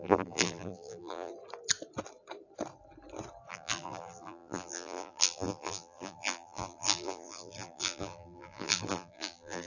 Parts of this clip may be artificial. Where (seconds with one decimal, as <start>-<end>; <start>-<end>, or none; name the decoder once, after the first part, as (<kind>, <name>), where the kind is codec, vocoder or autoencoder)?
0.0-1.3 (vocoder, BigVGAN v2); 3.5-9.7